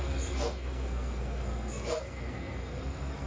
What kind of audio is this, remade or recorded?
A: remade